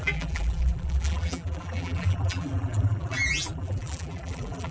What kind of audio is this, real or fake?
fake